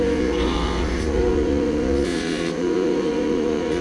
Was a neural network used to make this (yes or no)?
yes